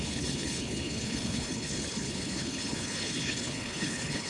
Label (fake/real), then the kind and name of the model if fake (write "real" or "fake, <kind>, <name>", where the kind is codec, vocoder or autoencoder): fake, codec, HILCodec